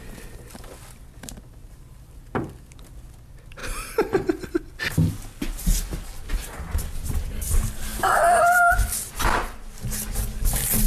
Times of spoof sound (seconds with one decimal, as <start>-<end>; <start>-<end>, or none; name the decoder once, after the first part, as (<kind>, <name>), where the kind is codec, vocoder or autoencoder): 1.6-2.5 (vocoder, BigVGAN v2); 3.6-4.8; 7.9-8.7